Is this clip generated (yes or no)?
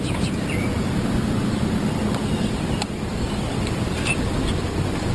no